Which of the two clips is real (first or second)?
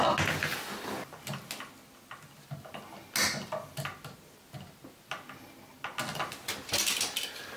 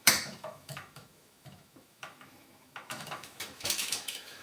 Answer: first